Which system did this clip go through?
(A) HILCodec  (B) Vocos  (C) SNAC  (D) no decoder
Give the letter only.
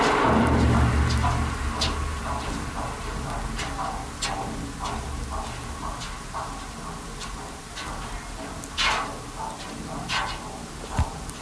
D